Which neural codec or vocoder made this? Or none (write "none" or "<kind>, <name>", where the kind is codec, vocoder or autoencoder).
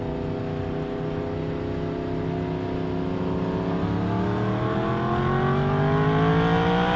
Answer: none